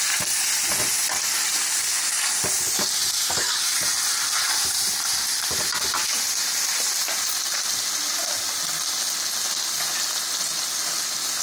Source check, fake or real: real